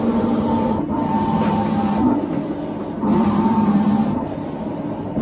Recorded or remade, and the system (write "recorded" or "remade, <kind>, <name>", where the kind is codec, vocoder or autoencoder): remade, vocoder, BigVGAN v2